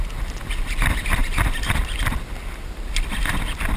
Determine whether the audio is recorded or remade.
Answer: recorded